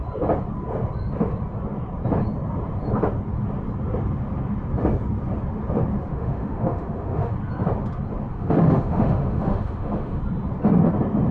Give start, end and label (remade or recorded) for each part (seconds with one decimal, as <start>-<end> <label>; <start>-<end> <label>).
0.0-6.1 recorded; 6.1-7.3 remade; 7.3-8.3 recorded; 8.3-10.2 remade; 10.2-11.3 recorded